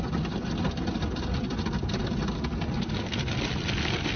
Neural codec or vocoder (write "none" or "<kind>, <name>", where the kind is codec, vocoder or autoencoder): none